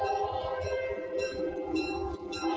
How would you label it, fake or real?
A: fake